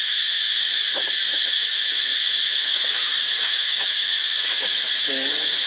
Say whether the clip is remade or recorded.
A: remade